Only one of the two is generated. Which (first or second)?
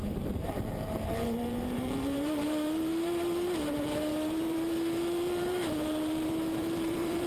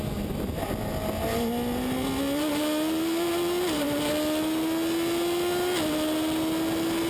first